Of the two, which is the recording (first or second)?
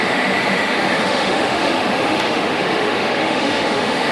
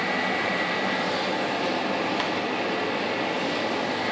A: second